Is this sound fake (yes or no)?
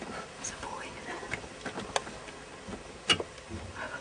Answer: no